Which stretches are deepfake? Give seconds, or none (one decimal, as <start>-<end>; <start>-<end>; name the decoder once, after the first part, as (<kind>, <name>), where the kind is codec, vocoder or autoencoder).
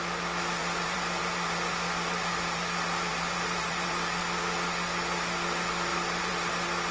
0.6-4.2 (vocoder, BigVGAN v2); 5.9-6.5